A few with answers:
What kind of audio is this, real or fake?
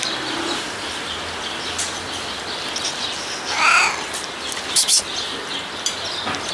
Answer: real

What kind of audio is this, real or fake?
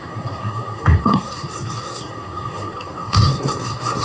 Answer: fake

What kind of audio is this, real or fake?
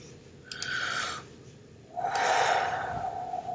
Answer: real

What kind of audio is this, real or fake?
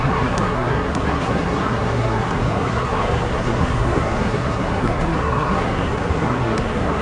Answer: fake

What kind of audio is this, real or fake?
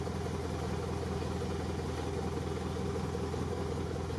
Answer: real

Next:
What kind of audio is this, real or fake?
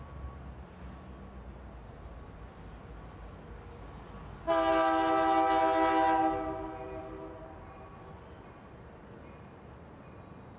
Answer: real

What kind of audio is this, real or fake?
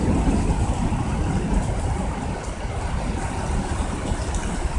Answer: real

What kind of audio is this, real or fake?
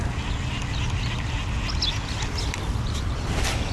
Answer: real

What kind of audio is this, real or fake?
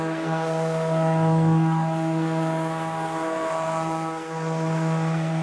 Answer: fake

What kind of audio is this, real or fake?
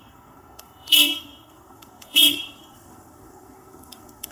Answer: fake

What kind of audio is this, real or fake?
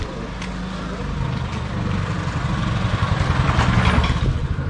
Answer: real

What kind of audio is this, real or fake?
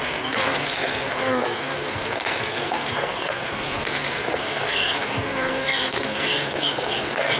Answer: fake